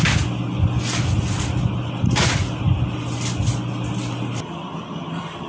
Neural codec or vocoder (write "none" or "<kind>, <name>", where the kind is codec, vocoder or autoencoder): none